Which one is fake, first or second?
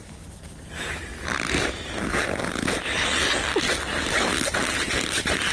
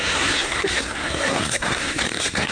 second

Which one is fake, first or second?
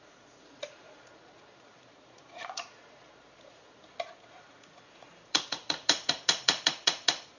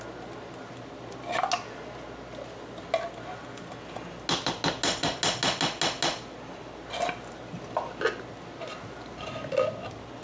first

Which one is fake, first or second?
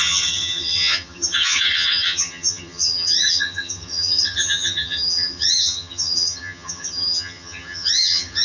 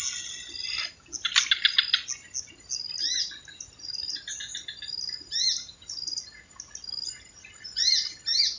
first